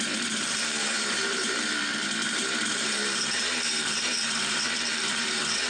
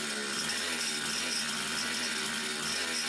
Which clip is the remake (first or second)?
first